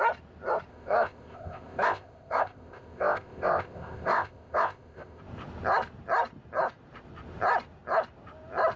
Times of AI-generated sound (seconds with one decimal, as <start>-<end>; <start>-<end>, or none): 0.7-5.2